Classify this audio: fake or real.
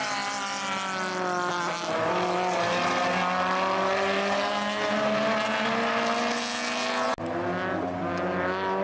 real